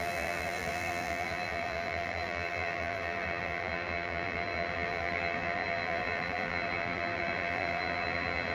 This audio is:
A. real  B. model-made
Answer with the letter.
B